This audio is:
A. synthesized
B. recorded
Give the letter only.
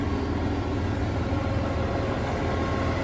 B